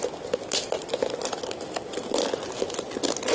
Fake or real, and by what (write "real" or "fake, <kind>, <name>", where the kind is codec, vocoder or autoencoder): real